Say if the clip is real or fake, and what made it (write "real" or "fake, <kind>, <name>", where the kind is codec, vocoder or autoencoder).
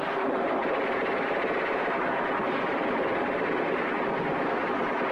real